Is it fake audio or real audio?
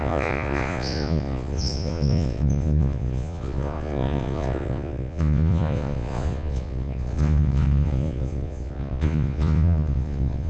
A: fake